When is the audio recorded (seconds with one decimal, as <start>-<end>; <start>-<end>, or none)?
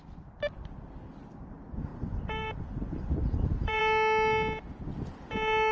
0.0-1.9; 3.8-5.7